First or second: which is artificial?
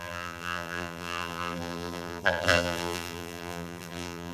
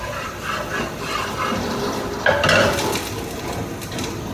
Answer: first